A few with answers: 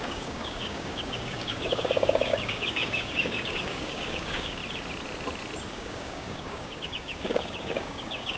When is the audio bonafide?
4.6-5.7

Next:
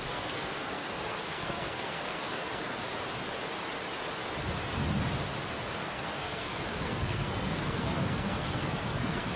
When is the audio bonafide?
2.9-5.8

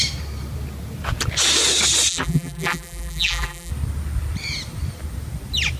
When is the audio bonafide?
0.0-2.1; 3.7-5.8

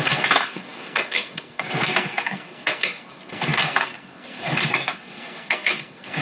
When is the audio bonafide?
none